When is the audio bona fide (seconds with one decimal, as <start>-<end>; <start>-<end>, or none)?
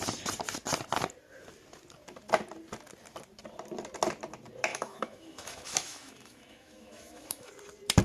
0.0-4.7; 7.5-8.0